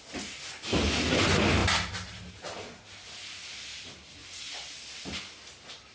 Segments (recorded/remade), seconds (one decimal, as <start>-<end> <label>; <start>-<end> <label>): 0.0-5.9 recorded